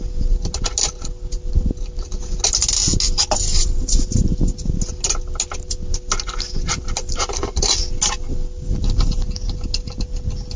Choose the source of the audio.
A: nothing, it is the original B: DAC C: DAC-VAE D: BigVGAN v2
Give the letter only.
A